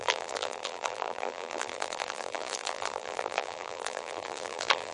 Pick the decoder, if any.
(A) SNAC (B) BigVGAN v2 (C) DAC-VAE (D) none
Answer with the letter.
B